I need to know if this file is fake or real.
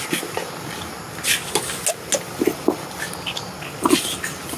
real